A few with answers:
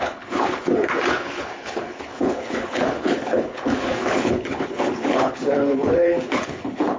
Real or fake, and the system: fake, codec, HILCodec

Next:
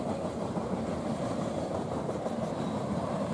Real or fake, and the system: fake, vocoder, BigVGAN v2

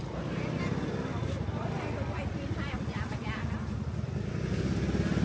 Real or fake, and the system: real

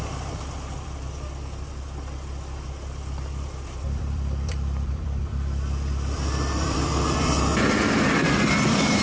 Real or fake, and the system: fake, vocoder, BigVGAN v2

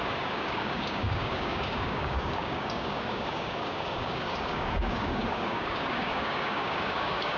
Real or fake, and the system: fake, codec, DAC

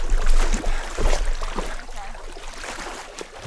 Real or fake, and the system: real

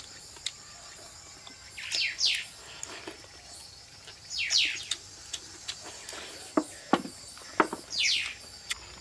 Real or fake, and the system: real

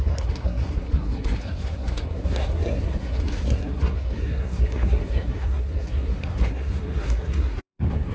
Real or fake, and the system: fake, codec, SNAC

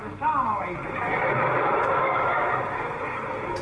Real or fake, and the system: real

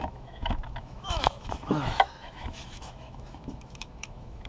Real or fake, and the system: fake, autoencoder, DAC-VAE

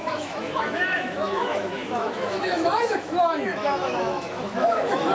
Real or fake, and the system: fake, autoencoder, DAC-VAE